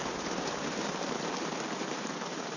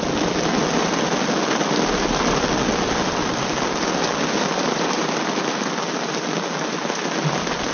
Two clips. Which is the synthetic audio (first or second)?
first